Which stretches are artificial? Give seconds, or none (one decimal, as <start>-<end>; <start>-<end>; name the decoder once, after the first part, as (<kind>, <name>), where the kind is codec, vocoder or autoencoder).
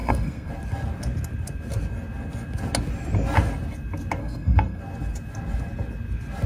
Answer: 0.0-0.5 (codec, SNAC); 4.2-4.8